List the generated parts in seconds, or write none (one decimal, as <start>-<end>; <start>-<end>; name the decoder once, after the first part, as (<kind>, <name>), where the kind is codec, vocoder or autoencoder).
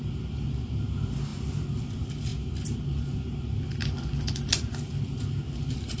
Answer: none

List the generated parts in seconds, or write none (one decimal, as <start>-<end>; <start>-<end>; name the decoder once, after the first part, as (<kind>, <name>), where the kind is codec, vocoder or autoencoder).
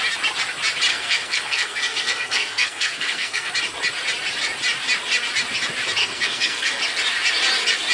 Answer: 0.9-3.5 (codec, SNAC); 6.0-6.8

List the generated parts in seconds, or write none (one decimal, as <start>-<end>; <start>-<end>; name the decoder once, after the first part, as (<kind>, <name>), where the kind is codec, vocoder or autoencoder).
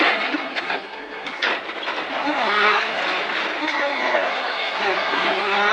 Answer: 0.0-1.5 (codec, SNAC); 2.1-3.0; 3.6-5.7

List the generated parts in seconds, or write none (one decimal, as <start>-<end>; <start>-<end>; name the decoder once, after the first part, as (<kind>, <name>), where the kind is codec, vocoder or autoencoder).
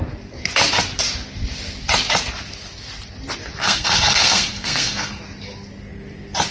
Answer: 3.6-5.2 (codec, SNAC)